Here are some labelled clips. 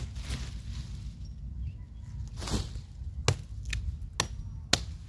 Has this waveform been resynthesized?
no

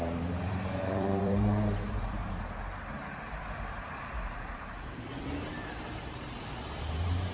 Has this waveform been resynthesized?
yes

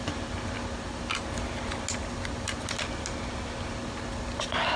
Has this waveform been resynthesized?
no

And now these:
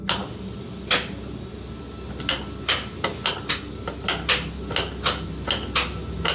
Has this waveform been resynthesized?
no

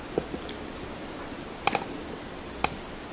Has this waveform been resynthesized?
yes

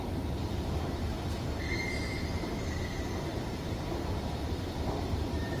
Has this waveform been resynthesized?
yes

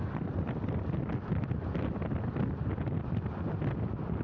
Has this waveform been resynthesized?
no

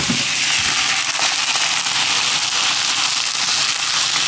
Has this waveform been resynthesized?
no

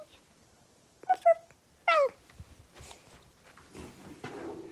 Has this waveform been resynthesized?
no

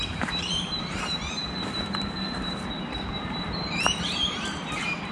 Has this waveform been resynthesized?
yes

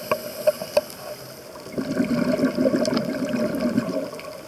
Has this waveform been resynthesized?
no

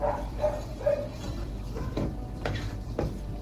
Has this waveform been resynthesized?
yes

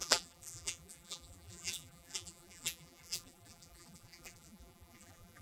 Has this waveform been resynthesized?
yes